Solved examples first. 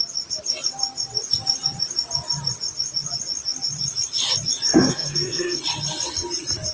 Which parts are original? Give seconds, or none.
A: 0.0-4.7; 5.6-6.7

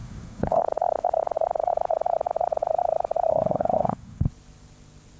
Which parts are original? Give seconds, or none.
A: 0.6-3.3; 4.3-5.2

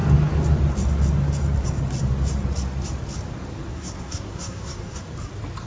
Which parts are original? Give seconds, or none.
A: 0.0-3.7; 5.0-5.7

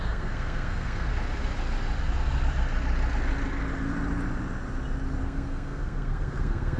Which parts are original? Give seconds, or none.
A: 1.1-5.2